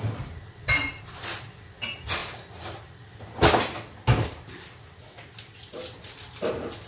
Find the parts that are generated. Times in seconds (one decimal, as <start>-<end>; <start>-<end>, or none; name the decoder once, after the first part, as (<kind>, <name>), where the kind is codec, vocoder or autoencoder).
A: none